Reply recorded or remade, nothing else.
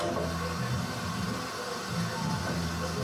recorded